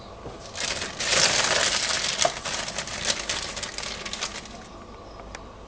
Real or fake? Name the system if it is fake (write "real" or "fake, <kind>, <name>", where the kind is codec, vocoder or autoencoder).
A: real